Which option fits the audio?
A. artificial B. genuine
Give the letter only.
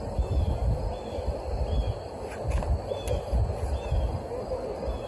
B